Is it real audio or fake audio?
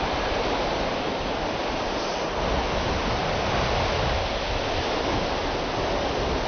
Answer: real